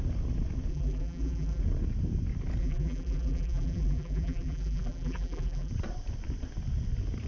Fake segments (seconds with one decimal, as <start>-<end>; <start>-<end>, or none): 0.7-1.6; 2.6-5.7